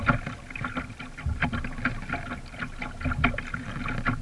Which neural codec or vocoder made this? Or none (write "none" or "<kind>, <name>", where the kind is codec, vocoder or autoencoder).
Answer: none